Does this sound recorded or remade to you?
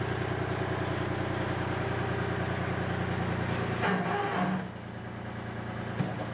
recorded